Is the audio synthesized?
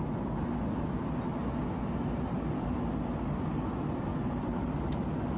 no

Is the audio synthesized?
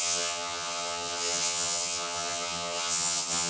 yes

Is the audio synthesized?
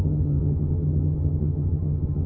yes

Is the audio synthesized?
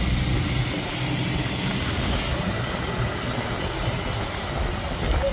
no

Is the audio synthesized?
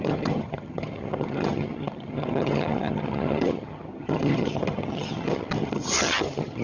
yes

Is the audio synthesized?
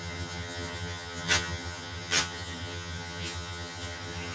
yes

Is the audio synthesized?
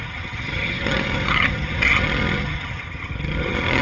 yes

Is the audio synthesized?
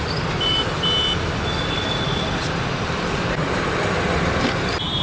no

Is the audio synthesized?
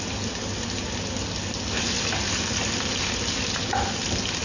no